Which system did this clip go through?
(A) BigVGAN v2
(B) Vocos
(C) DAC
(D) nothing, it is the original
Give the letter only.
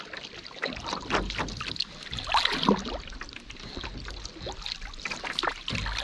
D